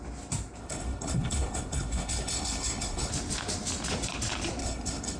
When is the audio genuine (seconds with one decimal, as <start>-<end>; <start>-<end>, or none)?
0.0-0.6; 3.1-4.6